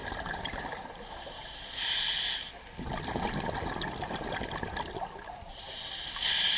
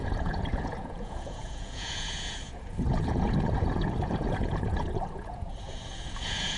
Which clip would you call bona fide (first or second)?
first